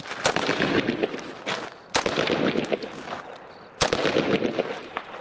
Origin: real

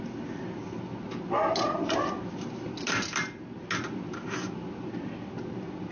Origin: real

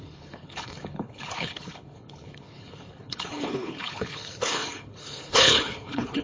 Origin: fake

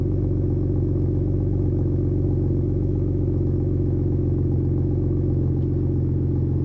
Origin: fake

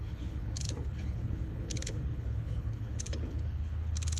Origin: fake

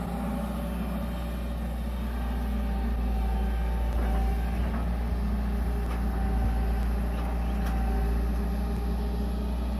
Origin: real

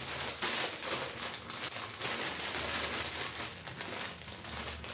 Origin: real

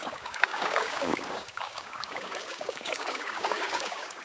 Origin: fake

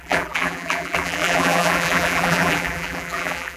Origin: fake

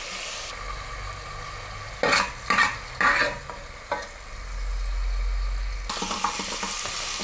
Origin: real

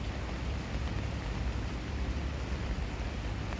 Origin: real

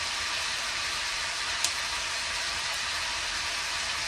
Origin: fake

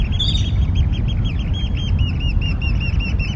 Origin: real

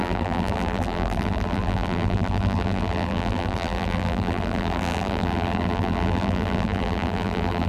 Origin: fake